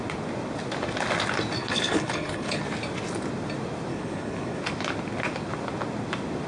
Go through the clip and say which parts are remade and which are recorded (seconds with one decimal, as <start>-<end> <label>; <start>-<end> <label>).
0.0-1.6 recorded; 1.6-2.6 remade; 2.6-3.9 recorded; 3.9-4.6 remade; 4.6-6.5 recorded